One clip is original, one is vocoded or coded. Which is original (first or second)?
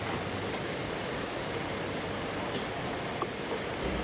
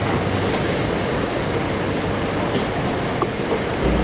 second